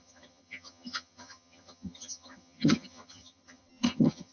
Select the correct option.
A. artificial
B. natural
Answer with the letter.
A